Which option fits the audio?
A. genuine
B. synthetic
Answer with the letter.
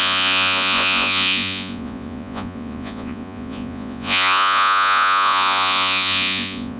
B